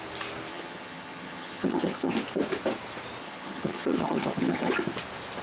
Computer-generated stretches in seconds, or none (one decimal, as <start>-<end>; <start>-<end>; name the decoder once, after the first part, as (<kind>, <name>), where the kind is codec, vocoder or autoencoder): 0.5-2.1 (vocoder, HiFi-GAN); 3.2-4.7